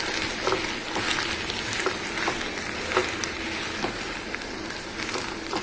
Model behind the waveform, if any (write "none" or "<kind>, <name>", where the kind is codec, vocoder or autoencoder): none